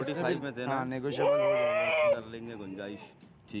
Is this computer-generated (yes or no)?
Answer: no